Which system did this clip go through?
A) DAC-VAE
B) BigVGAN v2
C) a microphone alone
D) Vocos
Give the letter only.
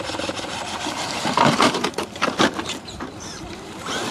B